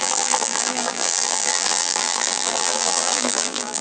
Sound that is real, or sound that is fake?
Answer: fake